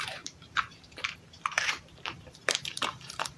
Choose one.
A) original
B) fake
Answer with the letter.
B